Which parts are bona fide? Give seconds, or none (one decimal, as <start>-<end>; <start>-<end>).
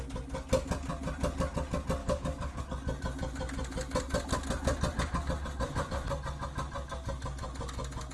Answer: 0.0-2.0; 2.6-8.1